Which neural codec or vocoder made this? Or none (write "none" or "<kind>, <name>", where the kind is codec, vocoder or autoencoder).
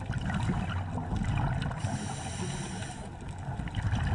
none